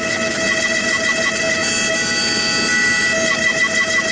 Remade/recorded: recorded